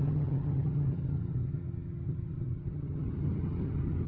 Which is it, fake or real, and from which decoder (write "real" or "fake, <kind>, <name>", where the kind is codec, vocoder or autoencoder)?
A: fake, vocoder, HiFi-GAN